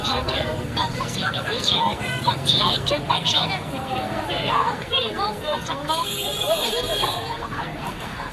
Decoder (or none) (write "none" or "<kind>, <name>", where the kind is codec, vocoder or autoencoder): codec, SNAC